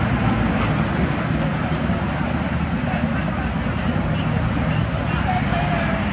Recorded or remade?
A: recorded